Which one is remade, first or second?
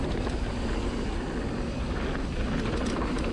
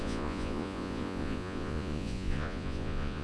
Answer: second